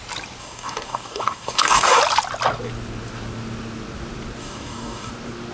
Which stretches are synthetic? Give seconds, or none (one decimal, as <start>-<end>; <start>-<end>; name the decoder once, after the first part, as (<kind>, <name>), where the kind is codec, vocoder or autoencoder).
0.4-2.0 (codec, DAC); 4.4-5.1